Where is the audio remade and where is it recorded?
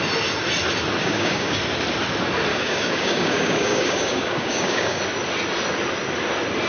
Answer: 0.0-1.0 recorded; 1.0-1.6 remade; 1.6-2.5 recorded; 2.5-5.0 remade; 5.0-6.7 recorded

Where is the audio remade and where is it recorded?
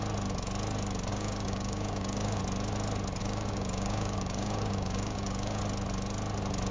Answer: 0.0-1.1 recorded; 1.1-2.4 remade; 2.4-3.2 recorded; 3.2-5.6 remade; 5.6-6.7 recorded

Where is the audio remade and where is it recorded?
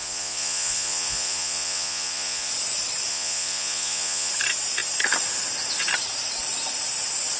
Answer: 0.0-2.5 remade; 2.5-3.1 recorded; 3.1-4.3 remade; 4.3-7.4 recorded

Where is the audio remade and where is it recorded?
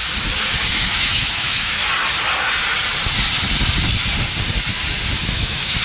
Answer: 0.0-0.7 recorded; 0.7-1.8 remade; 1.8-5.3 recorded; 5.3-5.8 remade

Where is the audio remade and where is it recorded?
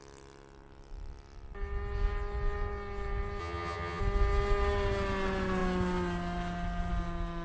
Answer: 0.0-3.4 recorded; 3.4-4.0 remade; 4.0-7.4 recorded